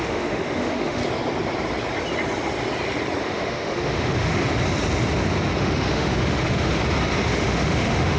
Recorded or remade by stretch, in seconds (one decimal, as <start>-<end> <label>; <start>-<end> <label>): 0.0-1.0 remade; 1.0-3.2 recorded; 3.2-4.4 remade; 4.4-5.6 recorded; 5.6-6.8 remade; 6.8-7.3 recorded; 7.3-8.2 remade